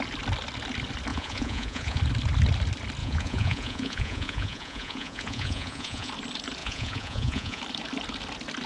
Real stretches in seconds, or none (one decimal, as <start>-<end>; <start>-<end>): 0.0-1.1; 2.0-3.0; 6.1-6.6; 7.6-8.7